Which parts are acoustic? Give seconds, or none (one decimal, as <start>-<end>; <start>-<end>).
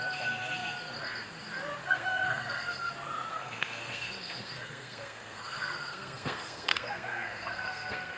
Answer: 0.0-1.8; 2.9-3.3